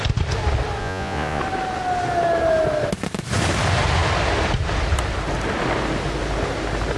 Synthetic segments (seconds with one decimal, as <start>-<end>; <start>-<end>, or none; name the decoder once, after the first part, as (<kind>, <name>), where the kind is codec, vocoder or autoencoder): 0.8-1.4 (vocoder, Vocos)